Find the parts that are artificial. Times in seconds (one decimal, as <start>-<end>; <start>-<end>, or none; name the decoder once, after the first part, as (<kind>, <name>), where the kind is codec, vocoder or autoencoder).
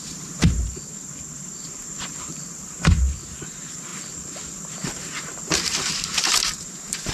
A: 0.0-7.1 (vocoder, BigVGAN v2)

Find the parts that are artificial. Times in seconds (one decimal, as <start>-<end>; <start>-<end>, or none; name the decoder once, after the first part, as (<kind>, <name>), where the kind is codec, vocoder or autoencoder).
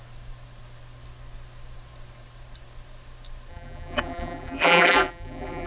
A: 3.5-5.7 (vocoder, BigVGAN v2)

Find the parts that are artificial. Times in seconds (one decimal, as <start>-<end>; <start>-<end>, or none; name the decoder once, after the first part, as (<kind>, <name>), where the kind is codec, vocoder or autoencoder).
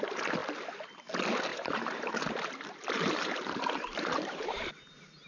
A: 1.5-4.7 (vocoder, BigVGAN v2)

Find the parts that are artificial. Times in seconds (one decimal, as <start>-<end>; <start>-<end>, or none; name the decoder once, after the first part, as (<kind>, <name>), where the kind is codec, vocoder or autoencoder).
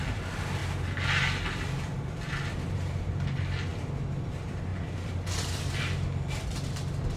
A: 0.0-3.7 (vocoder, BigVGAN v2); 4.3-7.2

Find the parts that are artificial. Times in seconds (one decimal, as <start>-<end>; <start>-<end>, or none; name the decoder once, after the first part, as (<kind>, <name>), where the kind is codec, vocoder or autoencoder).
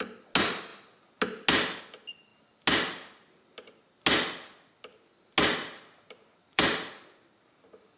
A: 5.6-6.9 (vocoder, BigVGAN v2)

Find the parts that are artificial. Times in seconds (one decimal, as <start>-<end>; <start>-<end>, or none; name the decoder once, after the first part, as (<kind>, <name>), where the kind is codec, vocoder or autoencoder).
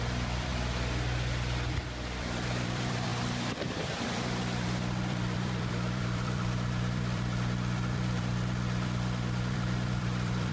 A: 0.0-0.5 (vocoder, BigVGAN v2); 2.2-10.5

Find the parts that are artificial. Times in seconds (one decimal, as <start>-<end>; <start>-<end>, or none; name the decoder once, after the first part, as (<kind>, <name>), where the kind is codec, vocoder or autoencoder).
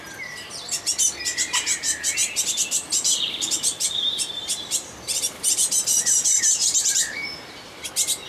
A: 1.3-5.6 (vocoder, BigVGAN v2); 6.6-7.9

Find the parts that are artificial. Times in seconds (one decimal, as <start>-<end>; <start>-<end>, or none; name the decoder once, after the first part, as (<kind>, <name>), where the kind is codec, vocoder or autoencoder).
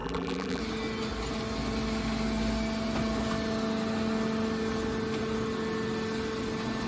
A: 0.0-0.6 (vocoder, BigVGAN v2)